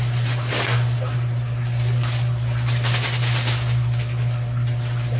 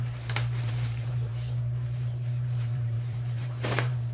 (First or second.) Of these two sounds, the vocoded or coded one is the second